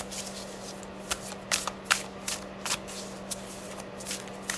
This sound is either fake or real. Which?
real